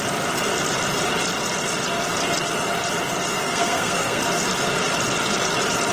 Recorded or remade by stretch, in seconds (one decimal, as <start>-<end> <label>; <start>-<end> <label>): 0.0-3.3 recorded; 3.3-4.2 remade; 4.2-5.9 recorded

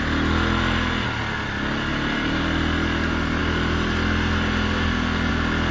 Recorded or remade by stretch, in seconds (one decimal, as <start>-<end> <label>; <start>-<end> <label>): 0.0-5.7 recorded

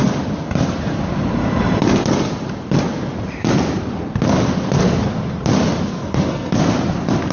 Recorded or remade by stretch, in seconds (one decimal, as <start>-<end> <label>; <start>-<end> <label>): 0.0-5.9 recorded; 5.9-6.6 remade; 6.6-7.3 recorded

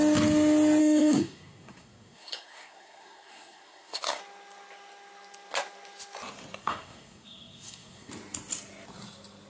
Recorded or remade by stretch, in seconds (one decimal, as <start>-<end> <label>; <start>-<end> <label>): 0.0-0.8 recorded; 0.8-4.2 remade; 4.2-6.6 recorded; 6.6-8.1 remade; 8.1-9.5 recorded

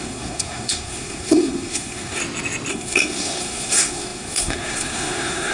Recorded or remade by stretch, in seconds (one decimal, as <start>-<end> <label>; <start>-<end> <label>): 0.0-2.2 remade; 2.2-2.7 recorded; 2.7-5.5 remade